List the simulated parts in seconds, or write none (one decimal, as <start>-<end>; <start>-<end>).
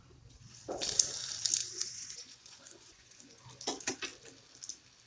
1.6-3.4